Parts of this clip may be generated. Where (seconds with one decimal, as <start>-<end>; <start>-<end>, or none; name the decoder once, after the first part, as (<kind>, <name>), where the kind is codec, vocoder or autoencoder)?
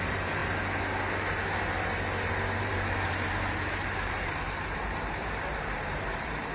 0.0-0.4 (vocoder, BigVGAN v2); 2.6-6.5